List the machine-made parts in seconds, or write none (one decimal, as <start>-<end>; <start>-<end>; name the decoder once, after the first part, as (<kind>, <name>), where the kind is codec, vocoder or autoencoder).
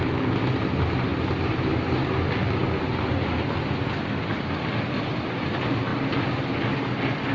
none